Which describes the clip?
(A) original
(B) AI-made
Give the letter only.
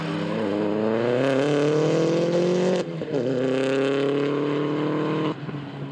A